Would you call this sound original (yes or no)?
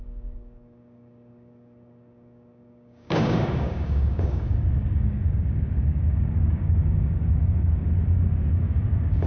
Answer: no